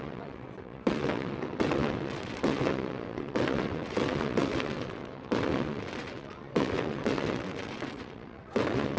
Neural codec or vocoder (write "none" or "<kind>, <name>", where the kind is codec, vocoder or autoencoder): vocoder, WaveNeXt